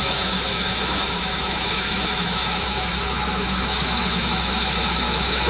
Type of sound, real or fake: fake